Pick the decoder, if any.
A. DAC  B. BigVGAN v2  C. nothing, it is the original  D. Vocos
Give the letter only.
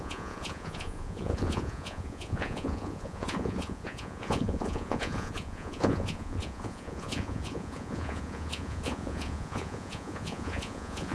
D